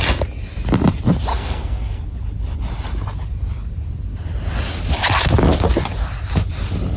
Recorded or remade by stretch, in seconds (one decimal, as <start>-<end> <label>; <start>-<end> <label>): 0.0-1.3 recorded; 1.3-2.0 remade; 2.0-7.0 recorded